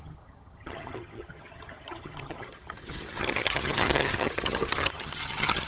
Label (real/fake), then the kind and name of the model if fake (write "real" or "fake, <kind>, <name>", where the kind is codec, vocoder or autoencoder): fake, vocoder, HiFi-GAN